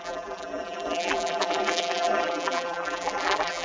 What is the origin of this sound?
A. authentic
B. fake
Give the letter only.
B